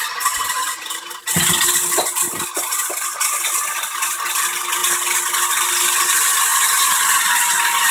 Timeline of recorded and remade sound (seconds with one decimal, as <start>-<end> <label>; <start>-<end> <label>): 0.0-7.9 recorded